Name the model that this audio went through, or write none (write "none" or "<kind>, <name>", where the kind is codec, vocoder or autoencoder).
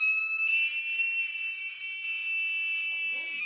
none